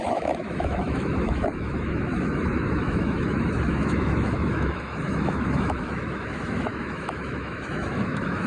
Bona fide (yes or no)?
no